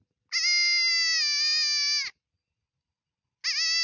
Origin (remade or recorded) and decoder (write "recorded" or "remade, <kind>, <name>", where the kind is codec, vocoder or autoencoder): recorded